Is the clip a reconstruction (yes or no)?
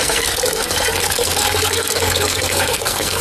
yes